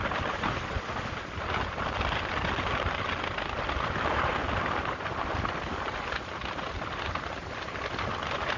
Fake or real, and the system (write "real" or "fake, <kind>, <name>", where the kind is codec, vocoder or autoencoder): real